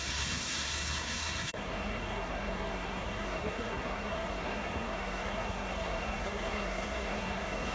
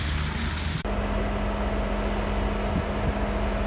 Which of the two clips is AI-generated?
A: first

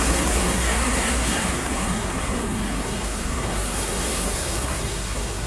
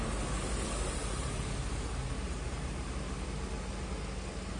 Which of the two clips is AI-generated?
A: first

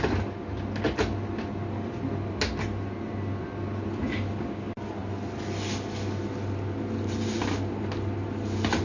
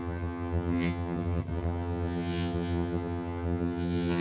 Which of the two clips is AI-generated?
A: second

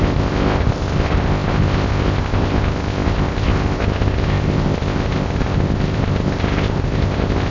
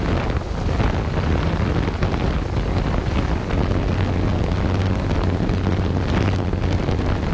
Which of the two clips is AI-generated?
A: first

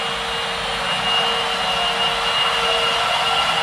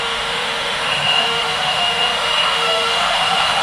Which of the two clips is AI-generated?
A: second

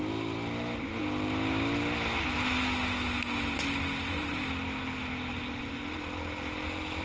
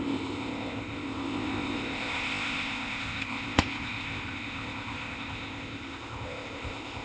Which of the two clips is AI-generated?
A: second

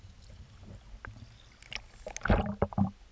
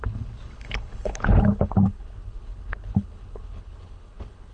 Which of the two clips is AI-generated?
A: second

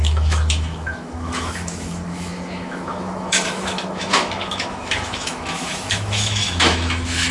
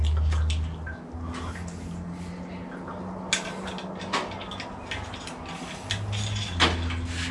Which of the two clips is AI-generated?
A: first